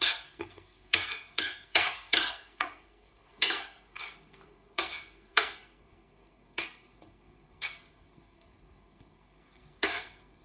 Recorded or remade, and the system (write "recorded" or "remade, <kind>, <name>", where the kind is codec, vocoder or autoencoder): remade, codec, SNAC